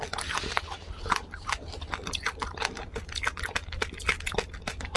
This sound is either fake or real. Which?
real